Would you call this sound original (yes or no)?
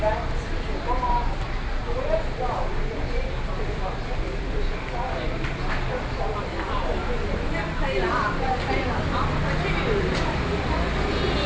yes